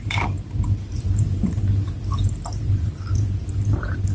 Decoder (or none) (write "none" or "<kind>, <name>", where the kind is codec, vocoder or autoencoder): vocoder, BigVGAN v2